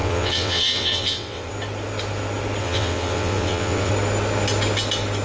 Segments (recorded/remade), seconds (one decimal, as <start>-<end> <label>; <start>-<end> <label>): 0.0-1.5 remade; 1.5-2.6 recorded; 2.6-3.9 remade; 3.9-5.2 recorded